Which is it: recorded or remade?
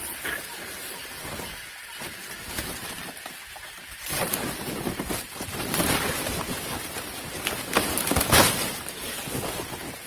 remade